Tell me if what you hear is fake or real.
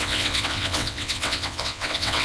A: fake